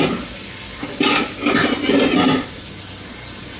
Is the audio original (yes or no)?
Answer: yes